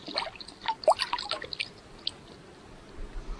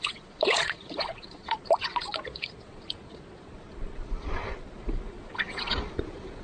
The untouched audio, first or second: first